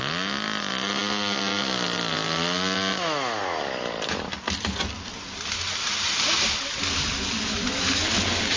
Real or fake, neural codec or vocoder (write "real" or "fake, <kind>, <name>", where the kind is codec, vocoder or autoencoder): real